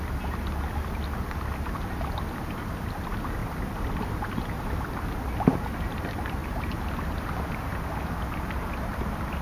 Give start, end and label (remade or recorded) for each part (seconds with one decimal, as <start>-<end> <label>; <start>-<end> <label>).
0.0-3.4 recorded; 3.4-4.4 remade; 4.4-9.4 recorded